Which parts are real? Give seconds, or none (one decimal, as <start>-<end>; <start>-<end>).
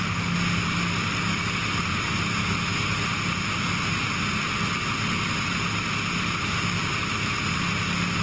0.0-8.2